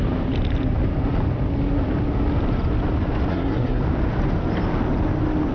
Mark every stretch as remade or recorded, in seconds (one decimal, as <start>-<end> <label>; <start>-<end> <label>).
0.0-3.3 recorded; 3.3-3.8 remade; 3.8-5.5 recorded